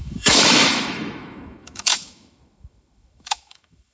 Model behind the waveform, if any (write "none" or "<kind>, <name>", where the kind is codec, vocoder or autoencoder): autoencoder, DAC-VAE